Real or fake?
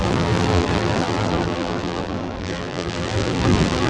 fake